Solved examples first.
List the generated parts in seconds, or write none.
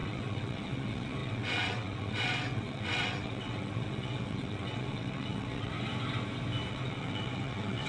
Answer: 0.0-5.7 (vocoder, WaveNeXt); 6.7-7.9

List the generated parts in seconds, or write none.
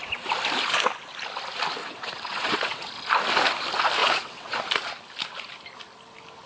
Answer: 1.8-2.9 (vocoder, WaveNeXt); 4.0-4.6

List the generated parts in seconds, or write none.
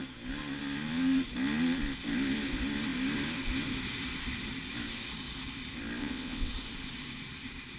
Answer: 6.0-6.5 (vocoder, WaveNeXt)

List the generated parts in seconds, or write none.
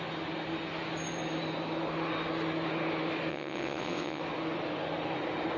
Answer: 3.3-4.2 (vocoder, WaveNeXt)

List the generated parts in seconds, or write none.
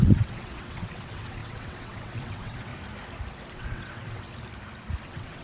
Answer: 0.0-2.7 (vocoder, WaveNeXt); 3.5-4.3; 5.0-5.4